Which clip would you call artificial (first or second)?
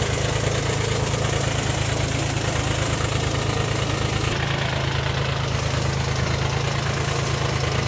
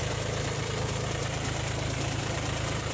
second